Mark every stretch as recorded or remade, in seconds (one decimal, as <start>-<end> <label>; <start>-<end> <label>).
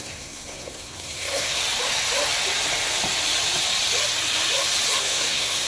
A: 0.0-1.6 remade; 1.6-5.0 recorded; 5.0-5.7 remade